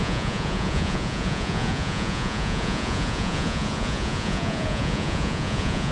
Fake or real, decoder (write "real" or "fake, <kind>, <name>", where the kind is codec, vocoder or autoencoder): fake, vocoder, Vocos